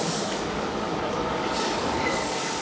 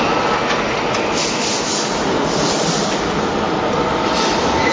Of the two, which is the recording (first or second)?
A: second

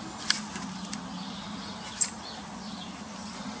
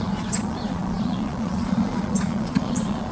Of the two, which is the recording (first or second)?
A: first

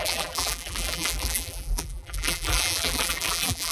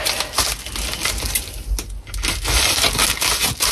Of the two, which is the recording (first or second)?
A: second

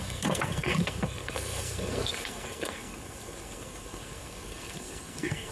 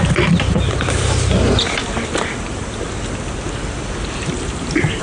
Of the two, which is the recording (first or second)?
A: second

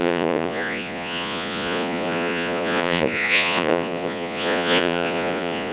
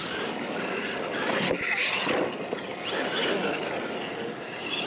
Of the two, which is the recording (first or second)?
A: second